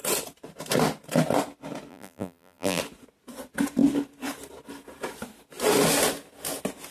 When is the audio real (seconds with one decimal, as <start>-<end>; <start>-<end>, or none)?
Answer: 0.0-1.9; 2.8-6.9